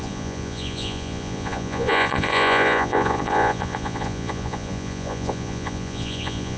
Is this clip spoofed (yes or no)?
yes